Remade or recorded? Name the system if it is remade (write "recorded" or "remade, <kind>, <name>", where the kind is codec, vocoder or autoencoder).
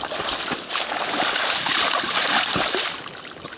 recorded